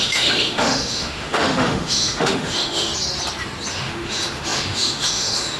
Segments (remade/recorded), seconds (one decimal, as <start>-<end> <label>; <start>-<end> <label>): 0.0-2.9 remade; 2.9-3.7 recorded; 3.7-5.6 remade